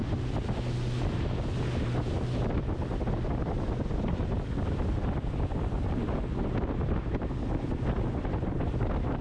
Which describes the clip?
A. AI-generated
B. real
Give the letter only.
B